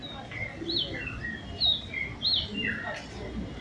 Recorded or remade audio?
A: recorded